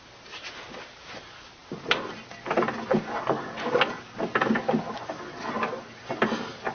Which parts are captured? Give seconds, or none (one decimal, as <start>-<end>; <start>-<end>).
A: 0.0-6.7